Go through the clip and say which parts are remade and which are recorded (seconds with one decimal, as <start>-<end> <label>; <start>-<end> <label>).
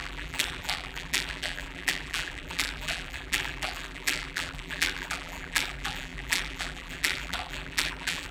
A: 0.0-8.3 remade